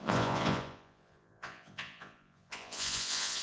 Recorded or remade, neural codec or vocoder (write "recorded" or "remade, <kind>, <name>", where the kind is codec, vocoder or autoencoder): remade, vocoder, Vocos